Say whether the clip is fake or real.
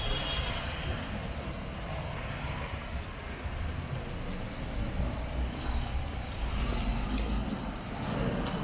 real